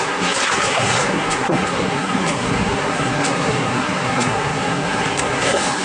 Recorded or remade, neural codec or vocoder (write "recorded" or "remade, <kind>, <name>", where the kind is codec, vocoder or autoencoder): remade, codec, SNAC